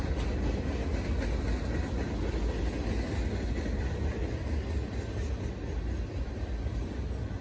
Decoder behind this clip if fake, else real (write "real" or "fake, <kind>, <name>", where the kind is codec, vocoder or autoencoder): real